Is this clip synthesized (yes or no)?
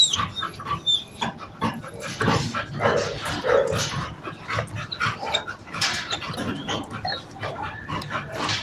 no